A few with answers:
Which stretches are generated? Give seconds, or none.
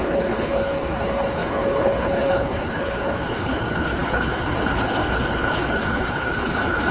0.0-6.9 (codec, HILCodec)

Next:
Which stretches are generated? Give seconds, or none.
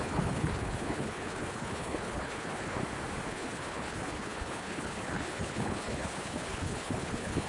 0.0-2.8 (codec, HILCodec); 3.3-7.5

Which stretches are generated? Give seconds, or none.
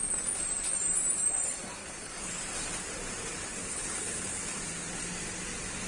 1.8-2.3 (codec, HILCodec); 3.6-4.4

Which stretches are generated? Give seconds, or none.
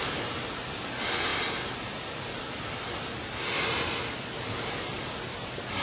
none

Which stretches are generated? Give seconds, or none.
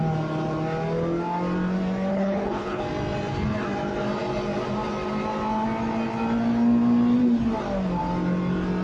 2.1-2.8 (codec, HILCodec)